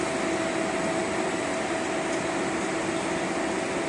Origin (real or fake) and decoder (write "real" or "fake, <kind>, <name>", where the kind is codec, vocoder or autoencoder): real